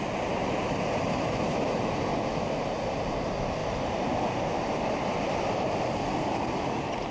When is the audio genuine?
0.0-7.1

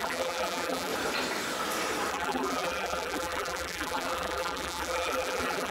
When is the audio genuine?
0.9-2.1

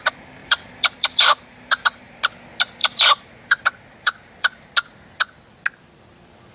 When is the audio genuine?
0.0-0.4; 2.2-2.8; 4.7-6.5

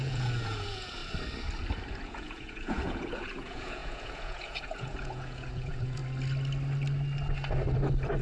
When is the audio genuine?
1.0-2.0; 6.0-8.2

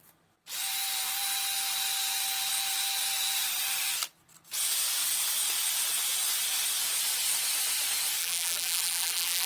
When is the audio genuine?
0.0-8.2

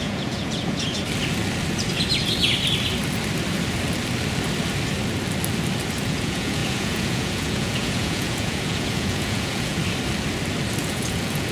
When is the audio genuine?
1.0-6.1; 9.8-10.8

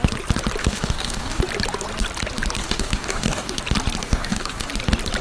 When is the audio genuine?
0.0-0.6; 1.4-2.6; 3.6-4.0; 4.7-5.2

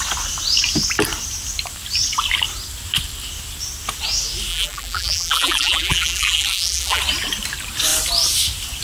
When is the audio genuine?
0.0-4.5; 7.0-8.8